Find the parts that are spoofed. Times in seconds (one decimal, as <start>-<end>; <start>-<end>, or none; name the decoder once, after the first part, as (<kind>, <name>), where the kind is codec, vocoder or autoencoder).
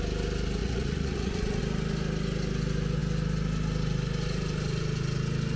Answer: 0.6-1.6 (vocoder, Vocos)